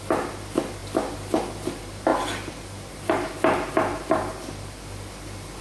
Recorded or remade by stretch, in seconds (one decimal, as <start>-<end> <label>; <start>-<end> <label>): 0.0-5.6 recorded